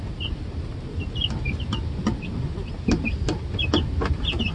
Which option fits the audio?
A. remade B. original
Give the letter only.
B